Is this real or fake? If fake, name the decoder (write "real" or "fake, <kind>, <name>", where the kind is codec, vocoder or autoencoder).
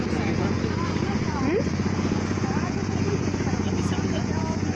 fake, vocoder, Vocos